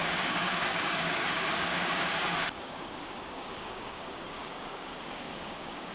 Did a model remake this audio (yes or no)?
yes